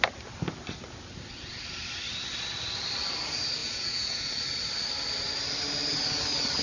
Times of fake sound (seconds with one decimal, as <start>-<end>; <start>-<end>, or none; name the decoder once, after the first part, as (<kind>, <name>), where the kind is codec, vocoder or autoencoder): 3.6-4.3 (vocoder, Vocos)